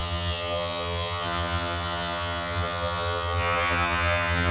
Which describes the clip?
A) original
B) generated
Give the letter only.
B